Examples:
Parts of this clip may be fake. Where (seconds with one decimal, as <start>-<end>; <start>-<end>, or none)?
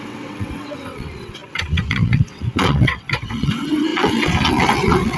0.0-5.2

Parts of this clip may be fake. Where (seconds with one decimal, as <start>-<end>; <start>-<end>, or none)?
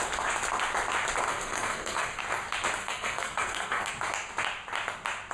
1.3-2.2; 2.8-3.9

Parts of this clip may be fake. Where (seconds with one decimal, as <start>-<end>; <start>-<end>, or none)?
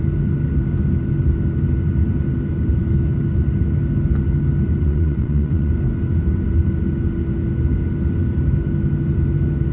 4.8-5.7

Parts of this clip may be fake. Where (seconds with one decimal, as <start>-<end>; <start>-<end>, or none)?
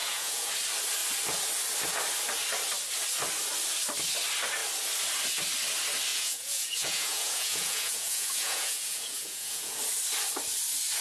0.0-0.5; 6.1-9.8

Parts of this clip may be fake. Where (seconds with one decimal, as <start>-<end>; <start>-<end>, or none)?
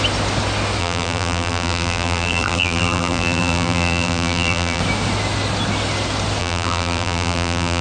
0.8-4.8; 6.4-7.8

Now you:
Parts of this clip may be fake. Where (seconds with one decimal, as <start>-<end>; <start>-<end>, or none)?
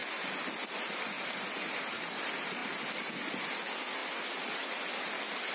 2.6-3.1; 4.0-4.9